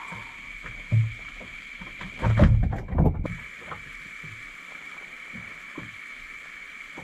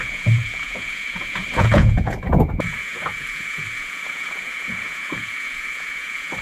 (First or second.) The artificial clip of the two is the second